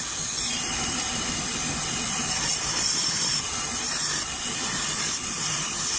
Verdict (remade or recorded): recorded